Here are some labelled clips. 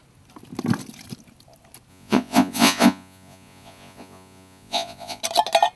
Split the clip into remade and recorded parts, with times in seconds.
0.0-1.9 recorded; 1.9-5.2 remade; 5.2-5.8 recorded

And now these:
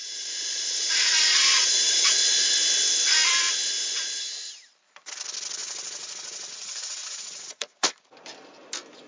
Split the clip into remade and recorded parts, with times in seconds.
0.0-2.5 remade; 2.5-5.6 recorded; 5.6-7.9 remade; 7.9-9.1 recorded

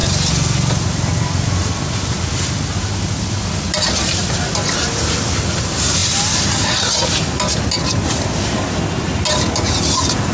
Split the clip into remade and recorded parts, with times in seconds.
0.0-10.3 recorded

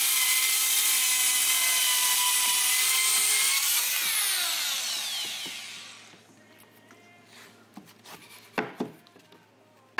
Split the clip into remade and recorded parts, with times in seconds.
0.0-10.0 recorded